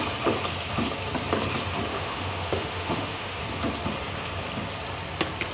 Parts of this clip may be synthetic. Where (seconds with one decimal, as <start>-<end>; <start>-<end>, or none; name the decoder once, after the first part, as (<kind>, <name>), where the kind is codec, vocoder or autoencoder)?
1.9-3.4 (autoencoder, DAC-VAE)